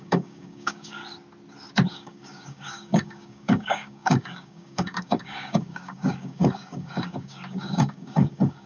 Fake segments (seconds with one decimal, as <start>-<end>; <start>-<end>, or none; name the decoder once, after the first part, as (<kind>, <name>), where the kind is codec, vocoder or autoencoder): 0.0-1.0 (codec, DAC); 1.9-8.7